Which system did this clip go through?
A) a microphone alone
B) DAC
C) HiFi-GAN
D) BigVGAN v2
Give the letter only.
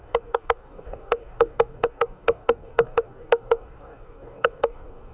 B